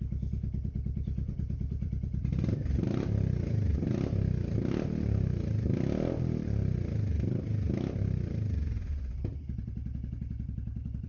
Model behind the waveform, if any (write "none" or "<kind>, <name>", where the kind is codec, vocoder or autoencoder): vocoder, BigVGAN v2